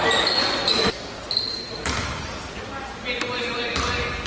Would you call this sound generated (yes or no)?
no